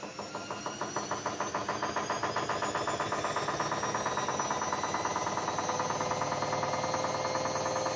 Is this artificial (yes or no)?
no